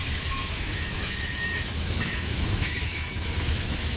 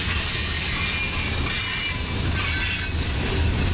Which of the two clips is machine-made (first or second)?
first